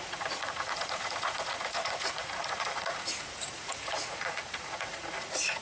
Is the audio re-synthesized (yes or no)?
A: yes